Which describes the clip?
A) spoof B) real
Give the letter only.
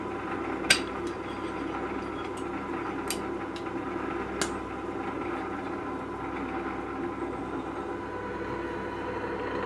B